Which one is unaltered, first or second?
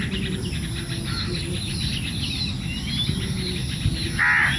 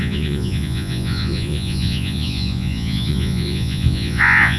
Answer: first